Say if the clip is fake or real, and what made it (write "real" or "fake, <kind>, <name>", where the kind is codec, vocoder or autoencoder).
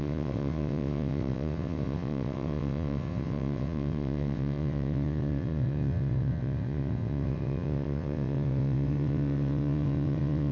fake, vocoder, WaveNeXt